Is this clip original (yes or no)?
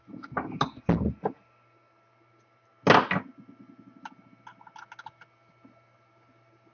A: yes